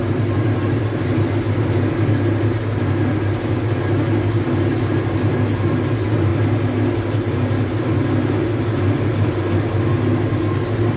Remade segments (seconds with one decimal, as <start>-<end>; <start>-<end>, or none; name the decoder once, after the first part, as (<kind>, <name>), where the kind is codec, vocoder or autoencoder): none